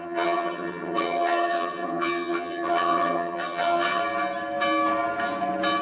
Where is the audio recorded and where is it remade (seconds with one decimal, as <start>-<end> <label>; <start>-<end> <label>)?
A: 0.0-4.0 remade; 4.0-5.8 recorded